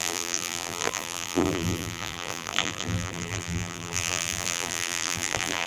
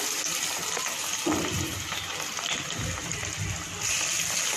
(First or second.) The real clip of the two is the second